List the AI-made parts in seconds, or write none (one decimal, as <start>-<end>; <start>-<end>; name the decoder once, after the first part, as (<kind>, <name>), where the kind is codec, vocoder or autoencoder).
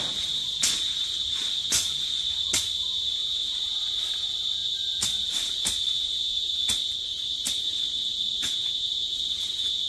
0.4-2.3 (vocoder, Vocos)